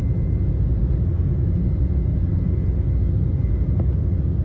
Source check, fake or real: real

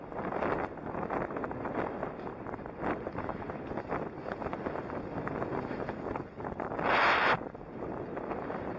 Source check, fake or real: real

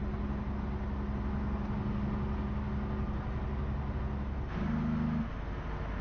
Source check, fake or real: real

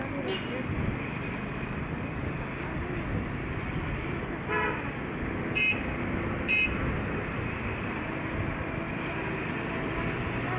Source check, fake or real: real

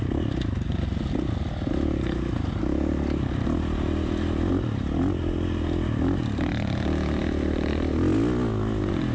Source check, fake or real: real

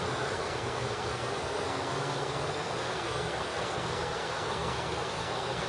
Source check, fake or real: fake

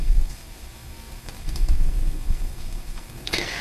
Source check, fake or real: fake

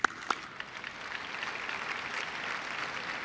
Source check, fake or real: real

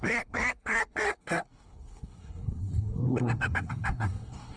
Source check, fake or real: fake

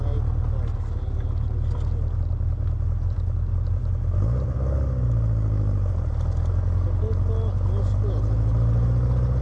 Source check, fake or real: real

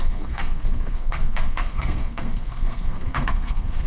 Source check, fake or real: fake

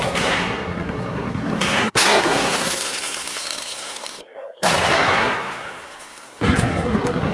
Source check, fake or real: fake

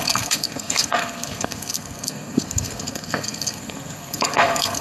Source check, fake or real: fake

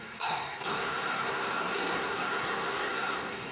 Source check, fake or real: fake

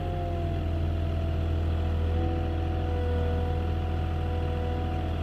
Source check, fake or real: real